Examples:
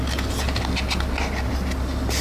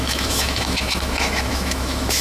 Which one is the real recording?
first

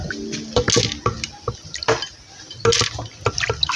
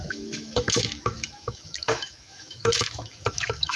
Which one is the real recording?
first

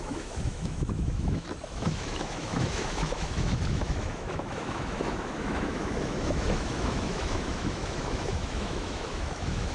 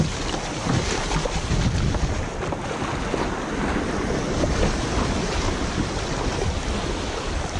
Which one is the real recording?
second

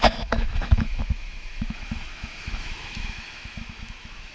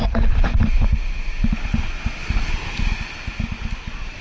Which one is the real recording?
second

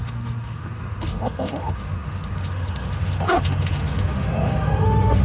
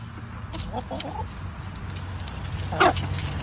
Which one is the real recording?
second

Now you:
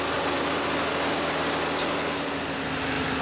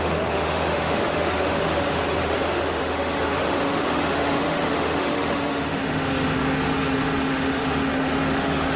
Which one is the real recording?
first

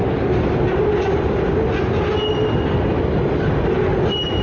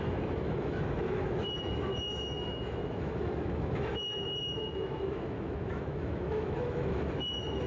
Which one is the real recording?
first